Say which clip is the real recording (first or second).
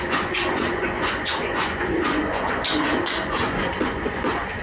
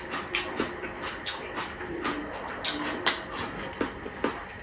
second